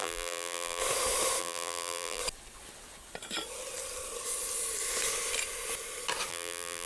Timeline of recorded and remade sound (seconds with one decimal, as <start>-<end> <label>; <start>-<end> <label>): 0.0-0.8 remade; 0.8-1.4 recorded; 1.4-2.2 remade; 2.2-6.3 recorded; 6.3-6.9 remade